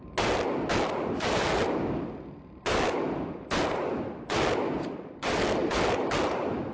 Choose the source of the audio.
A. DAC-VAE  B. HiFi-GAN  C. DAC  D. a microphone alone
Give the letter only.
D